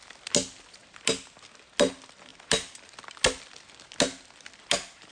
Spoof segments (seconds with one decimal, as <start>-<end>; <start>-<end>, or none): none